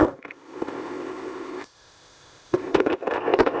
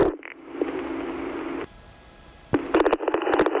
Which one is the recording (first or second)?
second